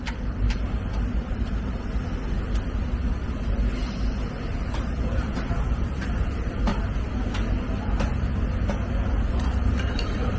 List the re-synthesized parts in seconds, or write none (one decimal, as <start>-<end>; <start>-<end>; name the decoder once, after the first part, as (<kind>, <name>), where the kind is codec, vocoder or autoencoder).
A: 0.0-6.7 (vocoder, BigVGAN v2); 9.3-10.4